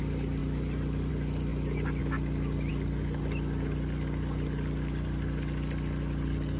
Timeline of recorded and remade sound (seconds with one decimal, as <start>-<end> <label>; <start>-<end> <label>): 0.0-6.6 recorded